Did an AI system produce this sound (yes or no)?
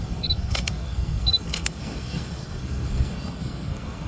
yes